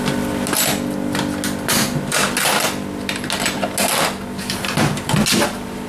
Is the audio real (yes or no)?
yes